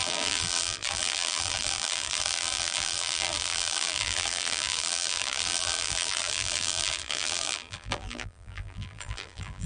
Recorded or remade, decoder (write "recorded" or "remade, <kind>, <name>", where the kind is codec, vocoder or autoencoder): remade, vocoder, BigVGAN v2